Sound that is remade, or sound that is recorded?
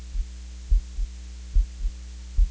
recorded